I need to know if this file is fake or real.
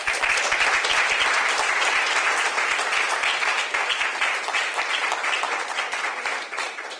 real